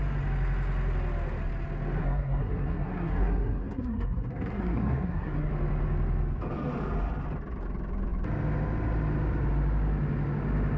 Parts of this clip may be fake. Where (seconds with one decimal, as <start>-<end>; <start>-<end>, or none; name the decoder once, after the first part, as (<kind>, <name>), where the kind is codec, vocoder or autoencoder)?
2.0-5.5 (codec, SNAC)